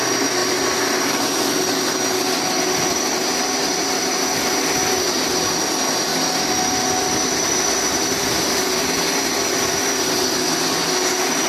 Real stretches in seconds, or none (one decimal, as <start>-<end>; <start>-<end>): 0.0-11.5